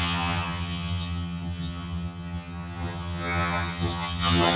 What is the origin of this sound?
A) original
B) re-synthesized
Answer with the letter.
B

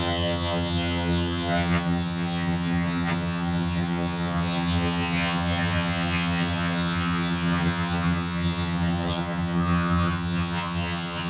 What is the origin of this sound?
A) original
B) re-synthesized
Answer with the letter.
B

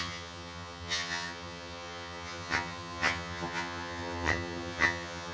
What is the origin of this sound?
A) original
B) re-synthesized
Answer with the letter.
B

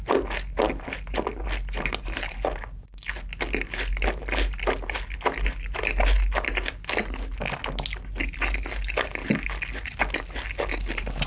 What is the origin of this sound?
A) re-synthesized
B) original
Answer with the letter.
B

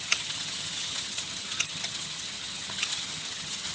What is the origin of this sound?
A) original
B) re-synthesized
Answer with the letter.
B